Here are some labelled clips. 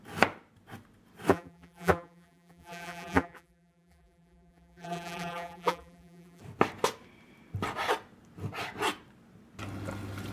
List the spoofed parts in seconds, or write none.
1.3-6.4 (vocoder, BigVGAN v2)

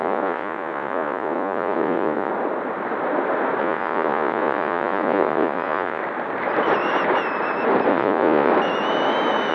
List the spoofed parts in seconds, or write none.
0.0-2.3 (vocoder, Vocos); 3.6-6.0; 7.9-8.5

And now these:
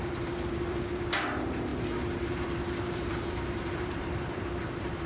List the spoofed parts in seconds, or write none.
0.0-5.1 (vocoder, BigVGAN v2)